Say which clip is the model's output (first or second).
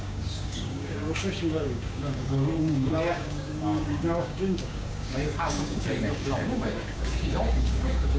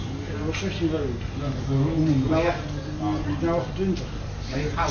first